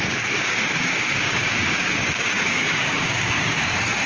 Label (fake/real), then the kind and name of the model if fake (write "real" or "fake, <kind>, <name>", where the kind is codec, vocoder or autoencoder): fake, codec, DAC